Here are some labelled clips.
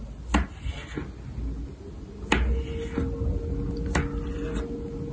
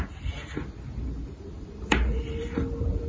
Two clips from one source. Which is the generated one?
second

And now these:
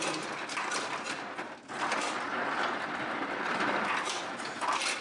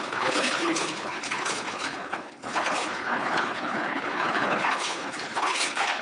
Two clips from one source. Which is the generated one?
second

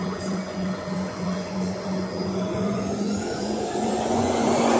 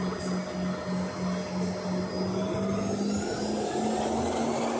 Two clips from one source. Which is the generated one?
first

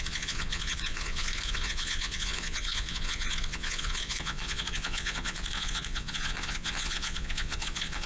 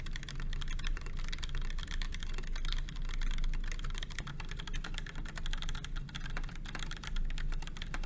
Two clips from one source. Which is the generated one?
first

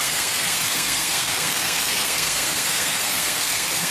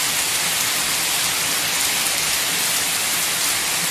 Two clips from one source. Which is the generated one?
first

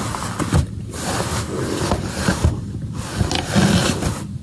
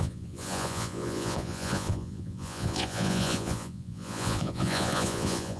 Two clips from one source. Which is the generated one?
second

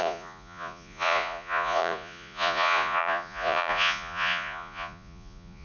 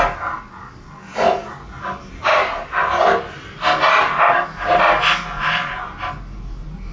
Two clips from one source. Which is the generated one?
first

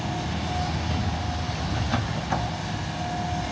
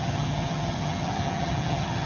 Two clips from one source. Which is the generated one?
second